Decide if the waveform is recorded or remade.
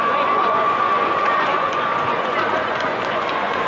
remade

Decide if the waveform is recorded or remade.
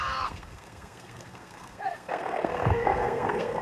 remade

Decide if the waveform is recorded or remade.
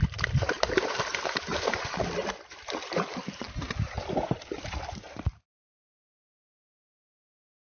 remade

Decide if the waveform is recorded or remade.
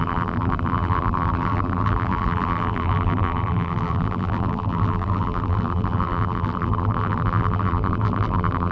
remade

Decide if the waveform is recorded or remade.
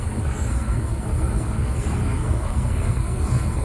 remade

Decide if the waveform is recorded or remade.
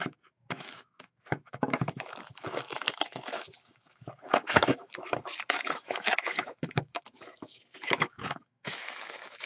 remade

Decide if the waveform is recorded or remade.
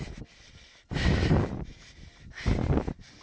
recorded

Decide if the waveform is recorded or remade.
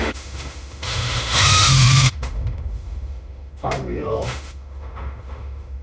remade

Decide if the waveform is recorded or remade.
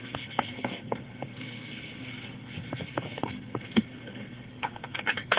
remade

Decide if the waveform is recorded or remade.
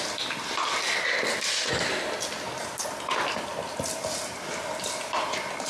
recorded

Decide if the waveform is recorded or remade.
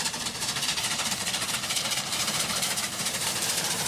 remade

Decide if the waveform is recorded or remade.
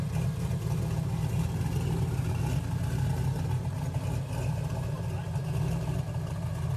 recorded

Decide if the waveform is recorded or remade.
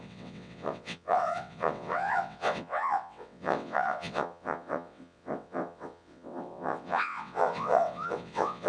remade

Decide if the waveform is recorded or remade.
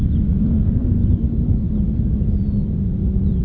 recorded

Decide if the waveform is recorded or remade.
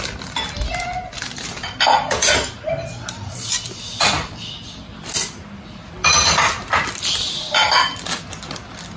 recorded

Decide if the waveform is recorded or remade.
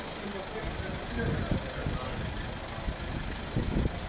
recorded